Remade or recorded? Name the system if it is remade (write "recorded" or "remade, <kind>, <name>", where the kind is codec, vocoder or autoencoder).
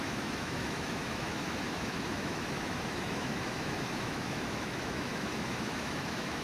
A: remade, autoencoder, DAC-VAE